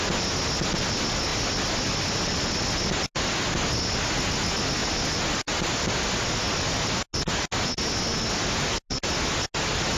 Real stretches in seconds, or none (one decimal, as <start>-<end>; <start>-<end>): 0.0-10.0